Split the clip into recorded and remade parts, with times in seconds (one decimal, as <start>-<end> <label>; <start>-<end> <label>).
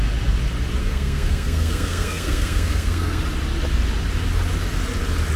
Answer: 0.0-0.8 recorded; 0.8-3.2 remade; 3.2-5.4 recorded